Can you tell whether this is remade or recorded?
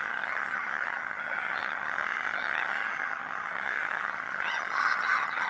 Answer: remade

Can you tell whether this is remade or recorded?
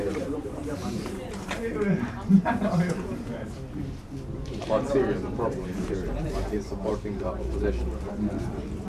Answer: remade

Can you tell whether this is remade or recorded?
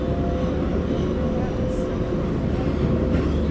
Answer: recorded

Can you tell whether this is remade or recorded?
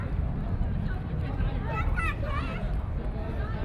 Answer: remade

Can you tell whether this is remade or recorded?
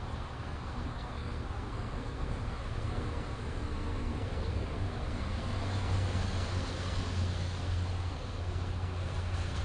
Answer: remade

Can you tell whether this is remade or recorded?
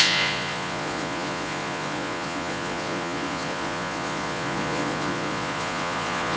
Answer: remade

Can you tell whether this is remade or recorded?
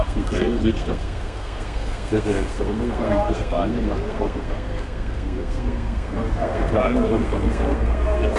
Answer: remade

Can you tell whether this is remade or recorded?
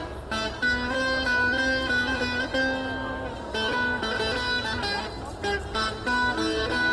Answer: recorded